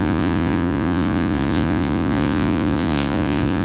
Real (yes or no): no